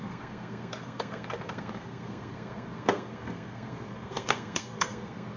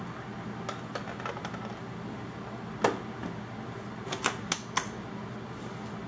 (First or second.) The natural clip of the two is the second